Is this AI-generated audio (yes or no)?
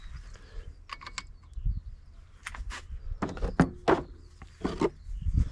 no